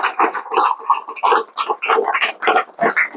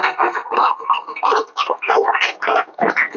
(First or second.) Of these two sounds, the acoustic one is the first